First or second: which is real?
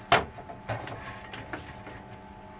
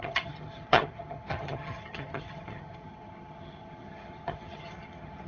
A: first